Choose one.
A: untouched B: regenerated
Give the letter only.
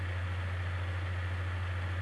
A